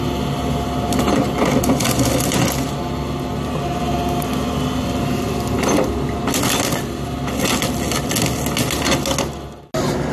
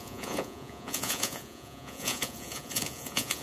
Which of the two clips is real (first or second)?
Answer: first